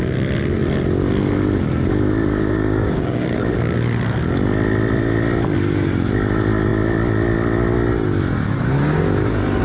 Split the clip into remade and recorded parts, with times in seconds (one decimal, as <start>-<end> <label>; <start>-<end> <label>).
0.0-2.3 recorded; 2.3-3.5 remade; 3.5-9.6 recorded